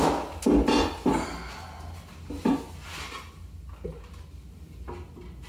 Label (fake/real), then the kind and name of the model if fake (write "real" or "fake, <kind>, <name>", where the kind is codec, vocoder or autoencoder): real